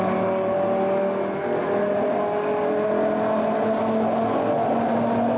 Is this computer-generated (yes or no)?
no